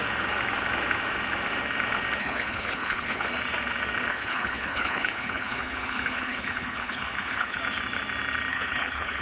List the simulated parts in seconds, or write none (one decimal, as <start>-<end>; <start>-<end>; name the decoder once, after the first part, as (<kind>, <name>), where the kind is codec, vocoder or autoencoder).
2.2-3.3 (codec, HILCodec); 4.1-7.6; 8.5-9.2